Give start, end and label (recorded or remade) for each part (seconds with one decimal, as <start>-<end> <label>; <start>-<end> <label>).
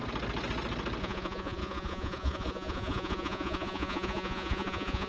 0.0-1.0 recorded; 1.0-5.1 remade